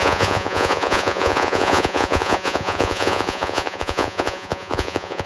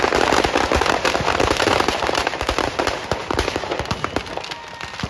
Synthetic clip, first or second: first